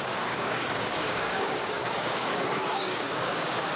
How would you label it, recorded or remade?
remade